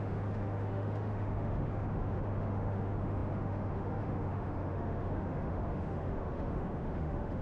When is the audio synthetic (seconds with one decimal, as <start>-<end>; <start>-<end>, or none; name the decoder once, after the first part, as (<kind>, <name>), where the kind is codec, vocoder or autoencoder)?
0.0-7.4 (autoencoder, DAC-VAE)